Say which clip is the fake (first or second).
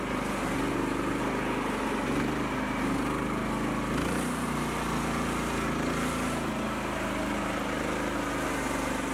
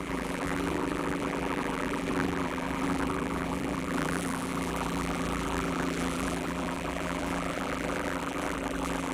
second